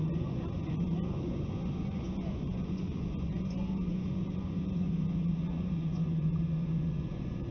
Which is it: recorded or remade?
remade